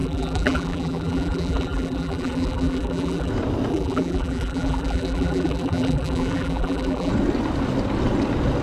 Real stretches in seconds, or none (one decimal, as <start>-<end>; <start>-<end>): 3.3-3.7; 7.1-8.6